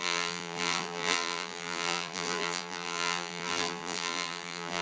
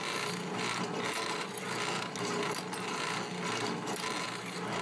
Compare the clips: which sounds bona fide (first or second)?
second